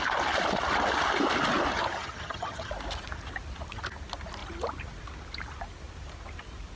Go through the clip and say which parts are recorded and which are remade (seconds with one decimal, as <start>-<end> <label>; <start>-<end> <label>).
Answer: 0.0-1.7 recorded; 1.7-2.7 remade; 2.7-6.8 recorded